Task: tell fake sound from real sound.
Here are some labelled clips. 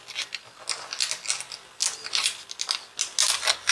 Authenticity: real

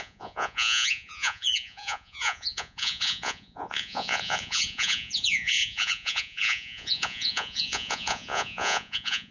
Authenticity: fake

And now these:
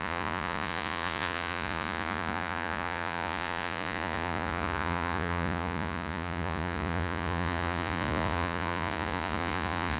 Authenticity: fake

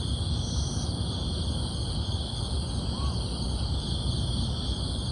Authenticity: real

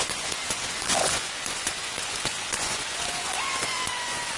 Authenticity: fake